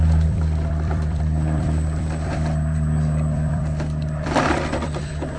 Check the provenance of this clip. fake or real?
fake